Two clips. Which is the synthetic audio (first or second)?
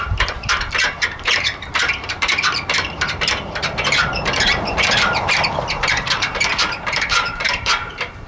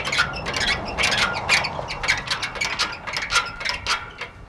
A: first